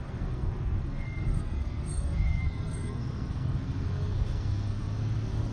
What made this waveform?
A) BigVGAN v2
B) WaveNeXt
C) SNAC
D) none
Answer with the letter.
C